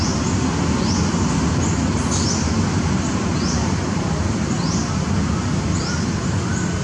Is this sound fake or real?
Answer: real